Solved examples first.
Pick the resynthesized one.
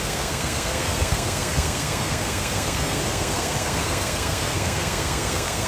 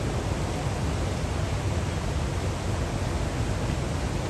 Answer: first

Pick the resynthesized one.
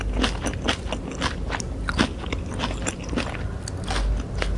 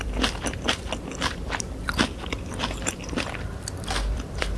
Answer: second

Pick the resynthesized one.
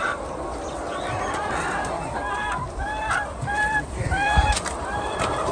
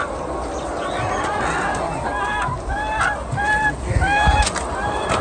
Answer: first